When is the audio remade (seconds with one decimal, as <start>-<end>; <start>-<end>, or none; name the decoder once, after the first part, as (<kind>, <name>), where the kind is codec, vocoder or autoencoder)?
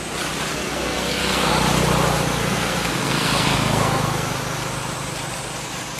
0.5-1.5 (codec, SNAC); 2.4-4.3